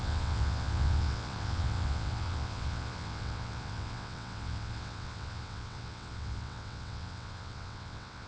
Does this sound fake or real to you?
fake